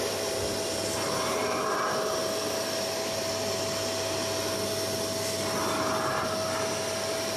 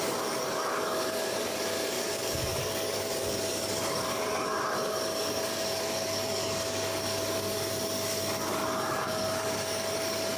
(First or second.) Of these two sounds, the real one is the first